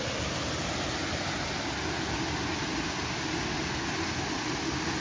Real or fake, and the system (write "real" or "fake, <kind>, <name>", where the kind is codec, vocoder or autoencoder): real